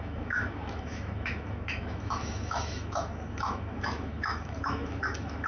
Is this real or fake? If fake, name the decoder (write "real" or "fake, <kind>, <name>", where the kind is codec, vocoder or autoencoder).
fake, autoencoder, DAC-VAE